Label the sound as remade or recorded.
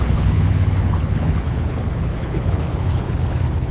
remade